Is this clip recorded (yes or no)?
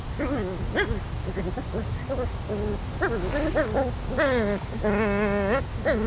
yes